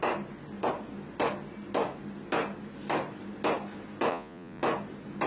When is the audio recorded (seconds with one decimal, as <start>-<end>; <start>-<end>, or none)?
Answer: 0.0-4.1; 4.6-5.3